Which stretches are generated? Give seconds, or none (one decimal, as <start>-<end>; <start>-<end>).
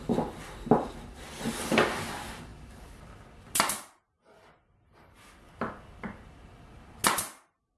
none